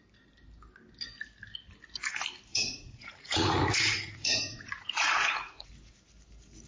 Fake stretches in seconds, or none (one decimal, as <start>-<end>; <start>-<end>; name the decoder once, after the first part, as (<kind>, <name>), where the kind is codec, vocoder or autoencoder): 2.5-5.7 (vocoder, Vocos)